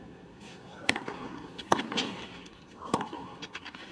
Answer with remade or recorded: remade